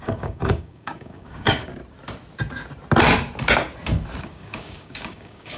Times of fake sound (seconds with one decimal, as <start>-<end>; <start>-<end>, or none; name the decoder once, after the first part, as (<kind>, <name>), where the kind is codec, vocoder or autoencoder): 0.0-1.7 (codec, DAC); 4.2-5.6